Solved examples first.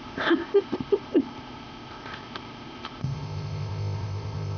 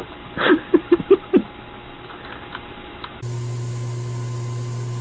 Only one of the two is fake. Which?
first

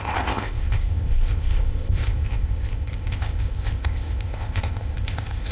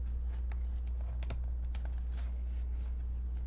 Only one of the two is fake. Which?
first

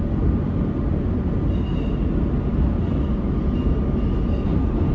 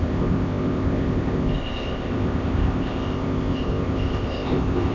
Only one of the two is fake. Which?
second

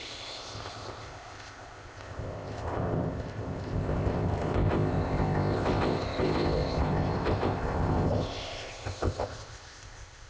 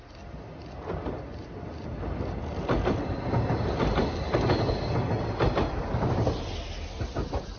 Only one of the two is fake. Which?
first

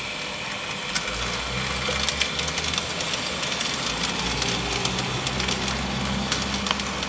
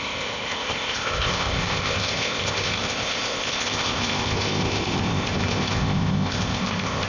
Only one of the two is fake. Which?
second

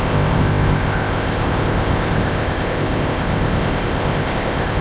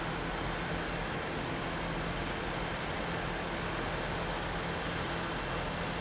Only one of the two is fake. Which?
first